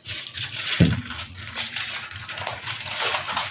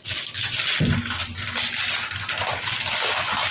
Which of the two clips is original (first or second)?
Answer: second